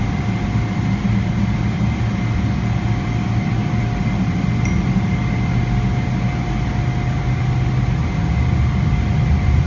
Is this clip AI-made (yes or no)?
no